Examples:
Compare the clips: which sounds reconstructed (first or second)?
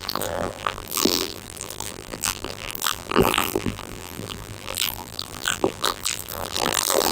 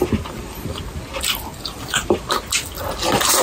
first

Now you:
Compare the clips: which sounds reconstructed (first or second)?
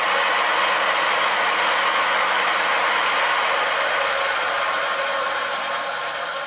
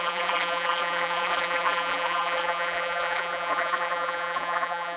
second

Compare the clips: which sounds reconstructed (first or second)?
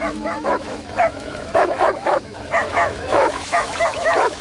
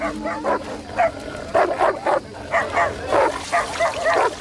first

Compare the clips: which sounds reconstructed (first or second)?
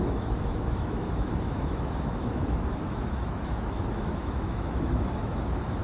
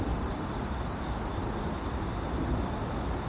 first